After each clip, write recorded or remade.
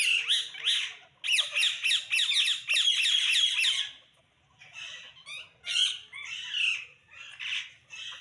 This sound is recorded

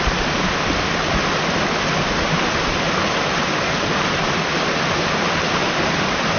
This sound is recorded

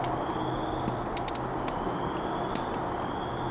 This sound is recorded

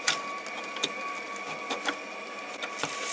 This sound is recorded